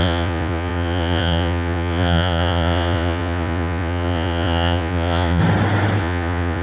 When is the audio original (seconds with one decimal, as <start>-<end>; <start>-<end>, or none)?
5.4-6.0